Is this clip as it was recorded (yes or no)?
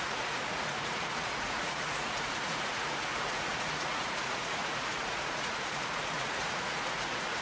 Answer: no